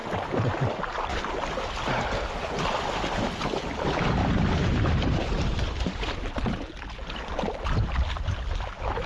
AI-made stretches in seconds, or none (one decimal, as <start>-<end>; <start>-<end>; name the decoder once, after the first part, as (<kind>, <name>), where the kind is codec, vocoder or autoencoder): none